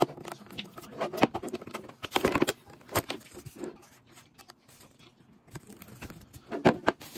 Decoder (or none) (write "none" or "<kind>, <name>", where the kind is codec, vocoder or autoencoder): none